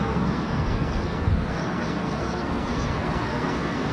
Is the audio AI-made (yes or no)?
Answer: yes